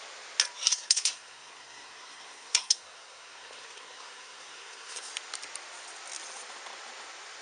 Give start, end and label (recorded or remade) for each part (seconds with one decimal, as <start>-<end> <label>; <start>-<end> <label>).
0.0-0.7 recorded; 0.7-5.1 remade; 5.1-7.4 recorded

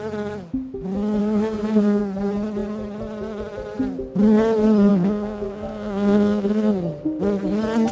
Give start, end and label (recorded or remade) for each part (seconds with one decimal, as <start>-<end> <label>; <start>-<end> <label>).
0.0-1.2 recorded; 1.2-2.0 remade; 2.0-4.9 recorded; 4.9-7.2 remade; 7.2-7.9 recorded

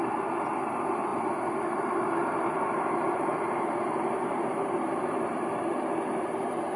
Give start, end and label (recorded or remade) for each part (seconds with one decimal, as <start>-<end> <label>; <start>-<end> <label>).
0.0-6.8 recorded

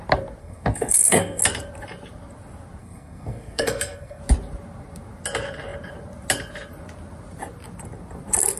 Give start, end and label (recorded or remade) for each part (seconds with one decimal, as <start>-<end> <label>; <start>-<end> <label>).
0.0-0.4 recorded; 0.4-1.4 remade; 1.4-2.8 recorded; 2.8-4.2 remade; 4.2-8.6 recorded

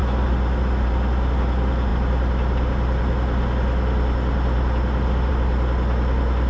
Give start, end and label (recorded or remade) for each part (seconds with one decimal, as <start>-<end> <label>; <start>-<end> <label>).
0.0-6.5 recorded

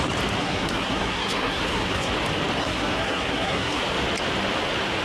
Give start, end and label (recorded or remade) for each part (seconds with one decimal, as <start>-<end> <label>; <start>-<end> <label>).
0.0-0.4 recorded; 0.4-2.1 remade; 2.1-2.6 recorded; 2.6-3.8 remade; 3.8-5.0 recorded